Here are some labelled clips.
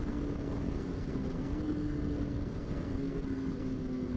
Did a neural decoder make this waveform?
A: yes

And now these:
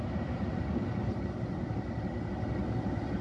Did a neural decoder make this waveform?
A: no